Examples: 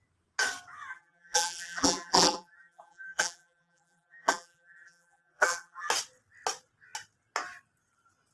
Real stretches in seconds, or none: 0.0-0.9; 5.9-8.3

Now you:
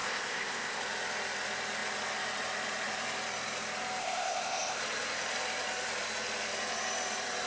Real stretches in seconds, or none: 0.8-4.0; 4.8-7.5

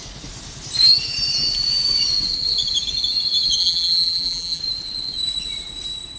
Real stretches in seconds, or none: 0.0-3.6; 4.6-6.2

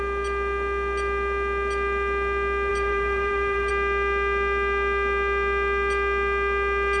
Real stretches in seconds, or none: 0.0-2.7; 3.7-7.0

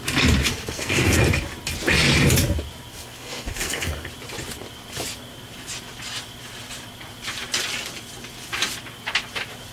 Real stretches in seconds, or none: 0.0-0.4; 1.2-2.9; 4.1-9.7

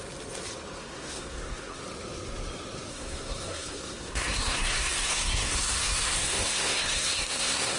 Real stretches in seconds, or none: 0.0-0.8; 1.8-2.9

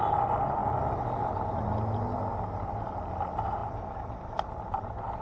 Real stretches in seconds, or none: 0.0-5.2